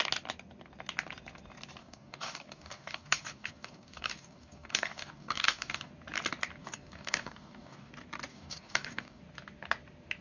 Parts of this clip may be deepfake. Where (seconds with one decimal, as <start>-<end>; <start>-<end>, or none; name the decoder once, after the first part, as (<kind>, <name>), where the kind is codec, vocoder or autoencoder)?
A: 1.8-5.9 (codec, DAC); 6.6-7.9; 8.3-9.2